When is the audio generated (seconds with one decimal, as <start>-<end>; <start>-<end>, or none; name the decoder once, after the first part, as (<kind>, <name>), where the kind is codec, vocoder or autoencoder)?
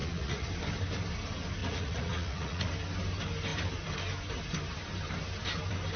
0.0-0.5 (vocoder, Vocos); 1.6-2.7